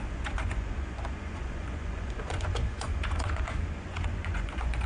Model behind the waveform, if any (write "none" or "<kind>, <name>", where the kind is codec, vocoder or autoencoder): vocoder, Vocos